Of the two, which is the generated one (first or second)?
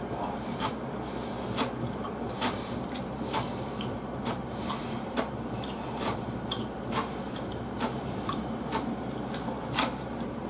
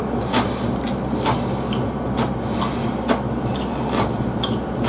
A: first